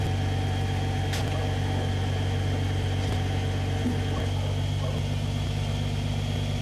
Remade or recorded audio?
recorded